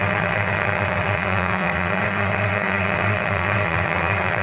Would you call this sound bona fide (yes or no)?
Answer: no